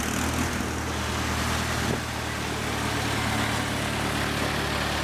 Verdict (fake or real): real